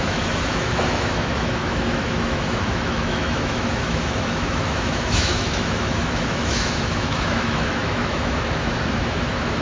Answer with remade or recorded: remade